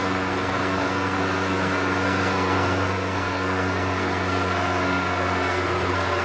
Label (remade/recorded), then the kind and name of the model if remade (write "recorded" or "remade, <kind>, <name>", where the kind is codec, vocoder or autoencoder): remade, codec, SNAC